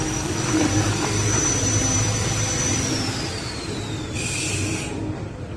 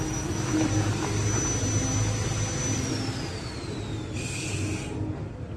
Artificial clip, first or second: first